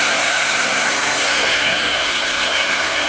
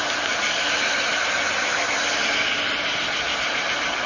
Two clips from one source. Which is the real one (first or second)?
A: second